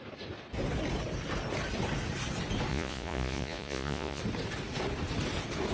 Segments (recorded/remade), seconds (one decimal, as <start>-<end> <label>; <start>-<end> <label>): 0.0-2.7 recorded; 2.7-4.2 remade; 4.2-5.7 recorded